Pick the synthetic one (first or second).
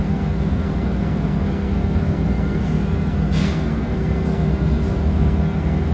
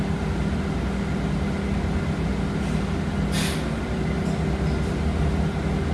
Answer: first